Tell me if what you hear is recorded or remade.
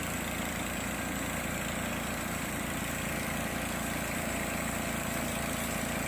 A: remade